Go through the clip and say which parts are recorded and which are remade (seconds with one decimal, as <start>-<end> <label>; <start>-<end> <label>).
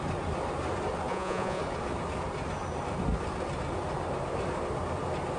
0.0-1.1 recorded; 1.1-1.6 remade; 1.6-5.4 recorded